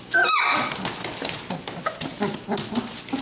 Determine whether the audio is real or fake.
real